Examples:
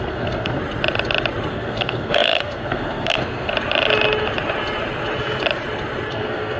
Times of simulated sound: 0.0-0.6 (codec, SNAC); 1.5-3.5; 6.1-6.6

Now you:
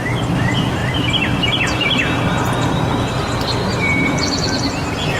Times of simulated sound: 0.8-3.2 (vocoder, BigVGAN v2); 3.7-4.2